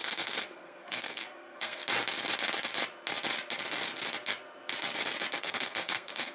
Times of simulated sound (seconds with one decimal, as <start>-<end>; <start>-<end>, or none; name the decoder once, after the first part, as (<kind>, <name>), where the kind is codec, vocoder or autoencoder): 0.0-1.8 (codec, SNAC); 5.4-6.3